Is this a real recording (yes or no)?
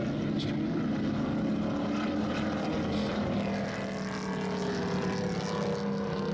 yes